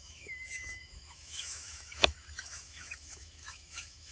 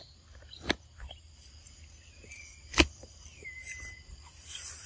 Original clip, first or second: second